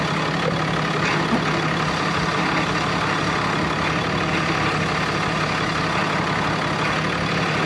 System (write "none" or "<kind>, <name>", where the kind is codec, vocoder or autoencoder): none